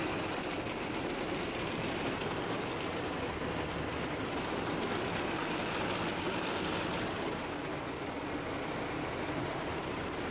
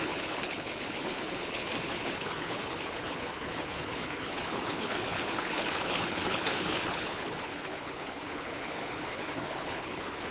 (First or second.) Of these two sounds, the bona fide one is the first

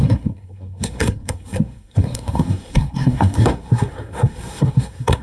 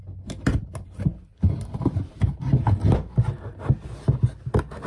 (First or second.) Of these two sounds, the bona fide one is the second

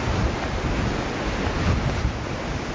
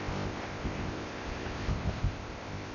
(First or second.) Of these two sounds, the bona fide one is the first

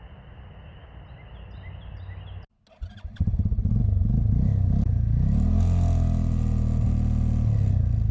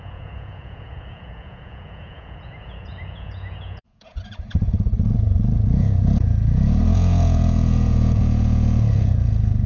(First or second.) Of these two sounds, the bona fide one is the first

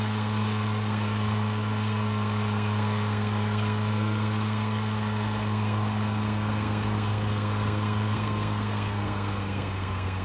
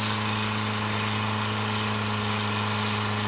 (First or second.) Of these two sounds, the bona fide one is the second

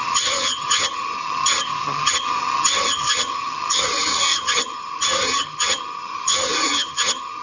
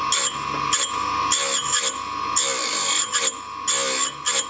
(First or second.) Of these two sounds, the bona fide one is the second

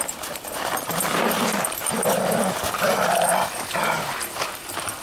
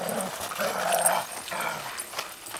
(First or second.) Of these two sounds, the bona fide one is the second